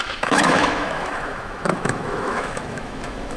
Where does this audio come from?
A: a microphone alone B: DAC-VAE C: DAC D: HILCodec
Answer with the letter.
B